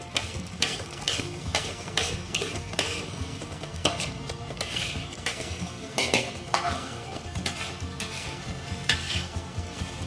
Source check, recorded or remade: remade